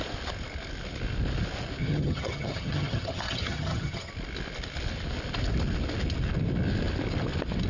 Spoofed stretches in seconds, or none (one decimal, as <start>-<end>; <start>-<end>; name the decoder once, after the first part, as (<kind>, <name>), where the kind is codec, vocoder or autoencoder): 1.8-4.1 (vocoder, HiFi-GAN)